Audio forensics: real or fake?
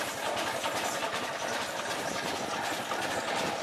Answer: fake